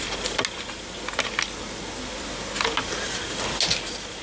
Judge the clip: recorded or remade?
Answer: recorded